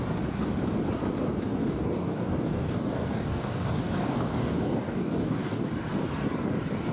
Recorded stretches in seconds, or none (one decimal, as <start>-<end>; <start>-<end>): 0.0-1.6; 5.7-6.9